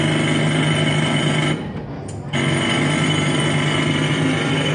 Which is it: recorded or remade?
recorded